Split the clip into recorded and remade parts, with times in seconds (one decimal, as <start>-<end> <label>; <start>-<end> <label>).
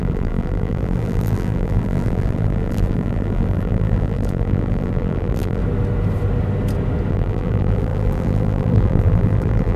0.0-5.6 remade; 5.6-7.1 recorded; 7.1-9.8 remade